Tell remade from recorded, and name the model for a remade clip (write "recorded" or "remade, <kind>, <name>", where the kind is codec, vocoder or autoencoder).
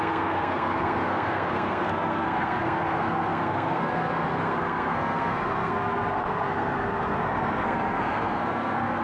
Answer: remade, codec, SNAC